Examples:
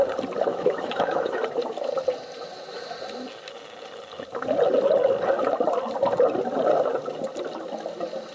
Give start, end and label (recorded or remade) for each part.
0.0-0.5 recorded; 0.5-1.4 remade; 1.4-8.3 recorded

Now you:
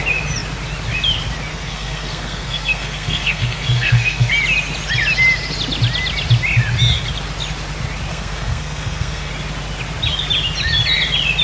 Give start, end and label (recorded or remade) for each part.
0.0-1.5 recorded; 1.5-4.3 remade; 4.3-8.1 recorded; 8.1-9.3 remade; 9.3-11.4 recorded